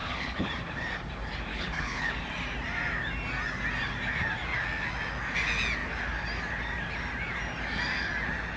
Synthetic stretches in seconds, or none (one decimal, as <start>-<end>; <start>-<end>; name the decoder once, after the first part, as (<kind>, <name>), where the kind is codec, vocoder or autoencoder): 0.0-0.5 (codec, HILCodec); 1.5-2.1